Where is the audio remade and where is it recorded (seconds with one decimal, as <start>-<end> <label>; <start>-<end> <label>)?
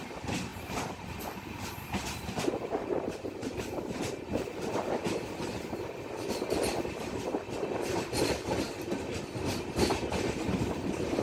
0.0-0.5 recorded; 0.5-5.7 remade; 5.7-11.2 recorded